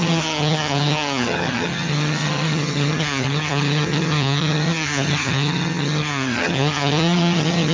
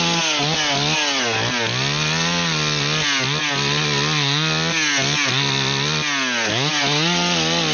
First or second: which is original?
second